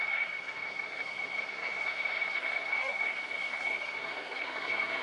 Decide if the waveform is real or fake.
fake